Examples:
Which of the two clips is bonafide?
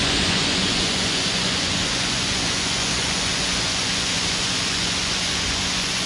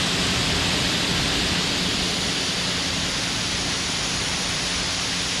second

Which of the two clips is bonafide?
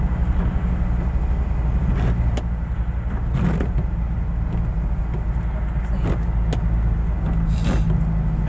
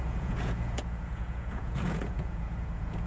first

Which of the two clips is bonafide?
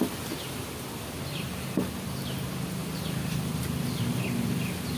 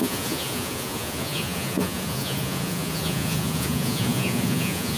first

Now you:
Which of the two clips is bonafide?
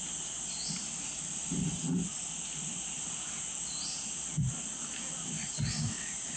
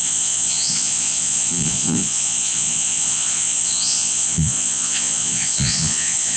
first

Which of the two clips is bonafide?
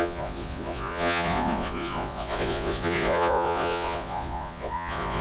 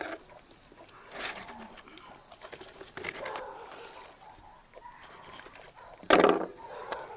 second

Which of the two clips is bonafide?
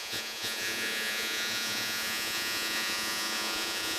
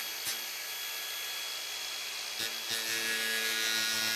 second